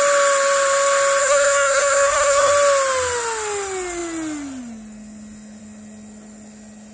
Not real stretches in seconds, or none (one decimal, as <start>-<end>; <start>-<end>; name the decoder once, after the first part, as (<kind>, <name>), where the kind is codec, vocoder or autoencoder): 1.2-2.5 (codec, SNAC)